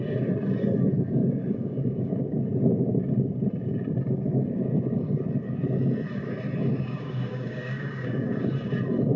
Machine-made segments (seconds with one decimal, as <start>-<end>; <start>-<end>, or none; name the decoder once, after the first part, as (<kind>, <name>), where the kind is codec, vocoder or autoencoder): 1.2-2.1 (codec, DAC); 6.7-8.5